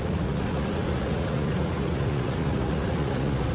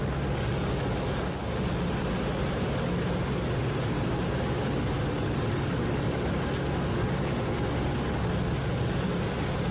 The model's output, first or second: first